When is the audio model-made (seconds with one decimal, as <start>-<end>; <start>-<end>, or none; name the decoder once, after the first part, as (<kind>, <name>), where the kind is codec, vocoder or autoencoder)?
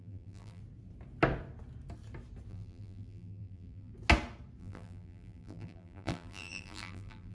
0.0-0.6 (vocoder, BigVGAN v2); 2.5-3.9; 4.6-7.3